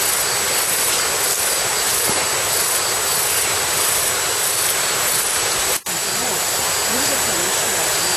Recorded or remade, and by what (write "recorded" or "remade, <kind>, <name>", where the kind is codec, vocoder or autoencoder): recorded